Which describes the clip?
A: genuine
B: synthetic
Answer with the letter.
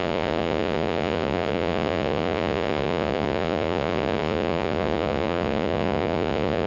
B